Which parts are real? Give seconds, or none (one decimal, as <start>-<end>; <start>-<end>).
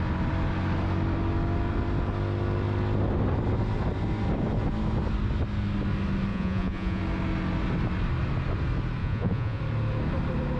0.0-6.3; 7.0-9.0; 9.6-10.6